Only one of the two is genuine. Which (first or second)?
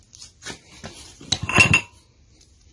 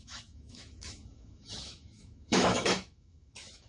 first